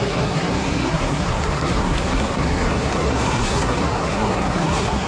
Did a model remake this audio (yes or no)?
yes